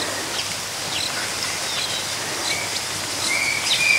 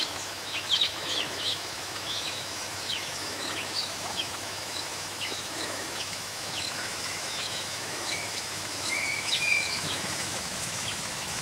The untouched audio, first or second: first